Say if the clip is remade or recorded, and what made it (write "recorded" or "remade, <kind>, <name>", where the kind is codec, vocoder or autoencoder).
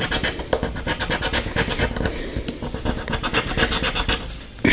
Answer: recorded